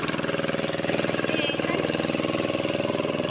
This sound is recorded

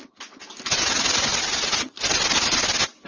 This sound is recorded